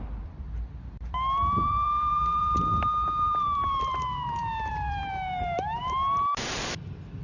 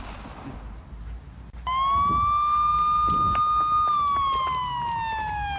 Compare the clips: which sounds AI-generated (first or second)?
first